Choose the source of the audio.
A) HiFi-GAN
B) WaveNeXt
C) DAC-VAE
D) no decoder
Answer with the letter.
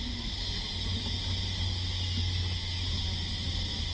D